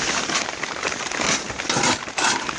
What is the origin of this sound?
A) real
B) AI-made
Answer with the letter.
A